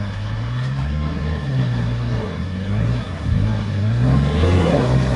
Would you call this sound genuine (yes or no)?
no